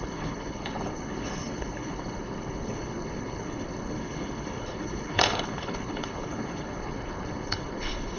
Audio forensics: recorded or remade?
remade